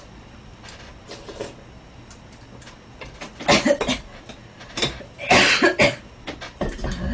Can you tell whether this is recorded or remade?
recorded